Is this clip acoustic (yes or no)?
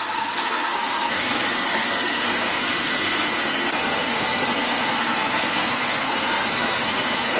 no